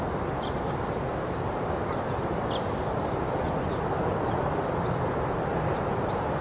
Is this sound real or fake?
real